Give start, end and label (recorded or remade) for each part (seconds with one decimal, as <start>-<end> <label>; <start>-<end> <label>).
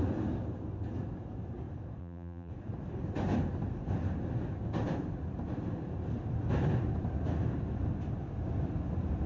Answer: 0.0-2.0 recorded; 2.0-2.5 remade; 2.5-9.3 recorded